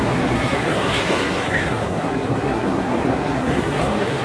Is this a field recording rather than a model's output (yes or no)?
no